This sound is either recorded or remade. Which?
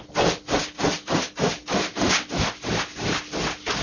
recorded